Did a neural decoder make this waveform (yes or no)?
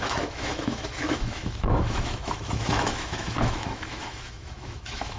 yes